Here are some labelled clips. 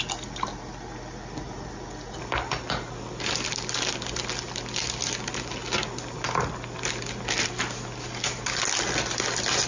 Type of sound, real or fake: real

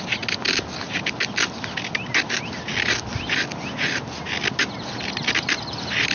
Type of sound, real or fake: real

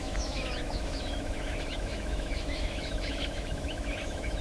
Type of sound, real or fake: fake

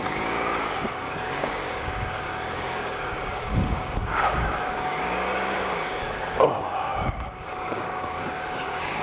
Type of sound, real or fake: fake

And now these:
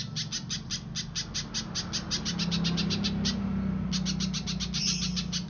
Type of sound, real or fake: real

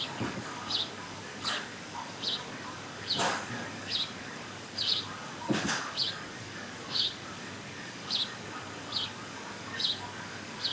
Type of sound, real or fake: fake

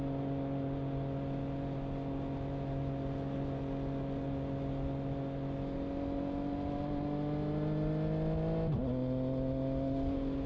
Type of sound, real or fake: real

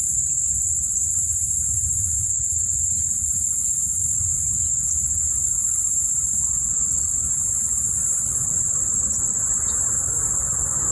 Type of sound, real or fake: real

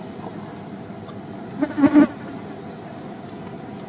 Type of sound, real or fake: real